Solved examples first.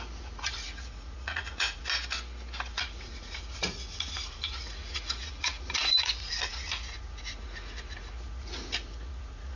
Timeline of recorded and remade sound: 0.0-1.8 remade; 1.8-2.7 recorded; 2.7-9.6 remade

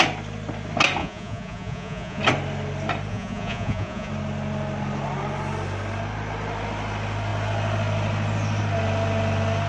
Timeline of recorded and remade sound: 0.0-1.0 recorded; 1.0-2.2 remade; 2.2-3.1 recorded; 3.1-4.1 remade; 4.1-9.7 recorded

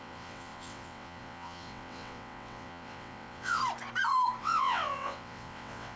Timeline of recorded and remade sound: 0.0-3.6 remade; 3.6-4.4 recorded; 4.4-6.0 remade

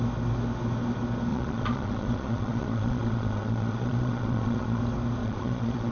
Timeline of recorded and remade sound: 0.0-1.3 recorded; 1.3-4.8 remade; 4.8-5.2 recorded; 5.2-5.9 remade

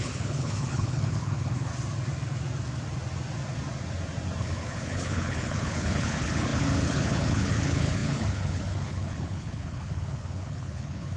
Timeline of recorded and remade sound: 0.0-1.7 remade; 1.7-4.4 recorded; 4.4-11.2 remade

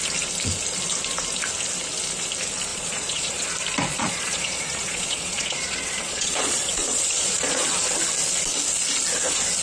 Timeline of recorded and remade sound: 0.0-2.7 recorded; 2.7-3.5 remade; 3.5-3.9 recorded; 3.9-7.7 remade; 7.7-9.6 recorded

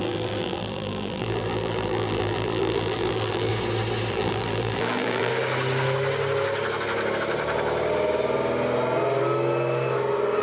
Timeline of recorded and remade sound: 0.0-3.5 remade; 3.5-4.1 recorded; 4.1-5.3 remade; 5.3-10.4 recorded